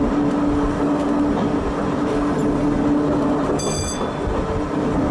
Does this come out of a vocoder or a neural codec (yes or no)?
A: no